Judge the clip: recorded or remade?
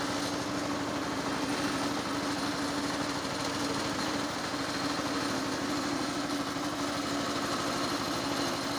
recorded